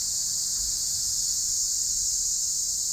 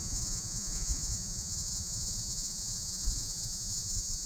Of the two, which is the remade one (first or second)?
second